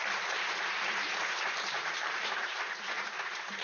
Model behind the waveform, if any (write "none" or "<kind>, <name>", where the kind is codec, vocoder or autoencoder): vocoder, BigVGAN v2